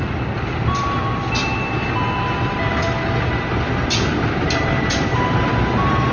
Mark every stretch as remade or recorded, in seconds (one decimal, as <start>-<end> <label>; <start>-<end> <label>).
0.0-6.1 recorded